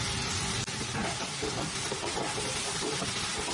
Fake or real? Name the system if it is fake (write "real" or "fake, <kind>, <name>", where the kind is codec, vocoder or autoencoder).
real